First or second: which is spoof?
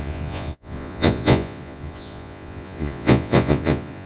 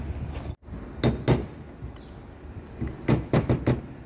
first